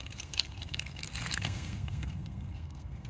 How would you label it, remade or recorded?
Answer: remade